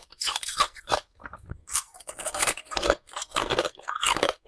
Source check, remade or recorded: remade